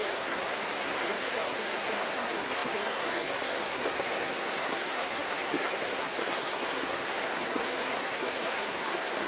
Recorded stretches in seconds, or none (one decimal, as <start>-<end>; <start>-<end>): none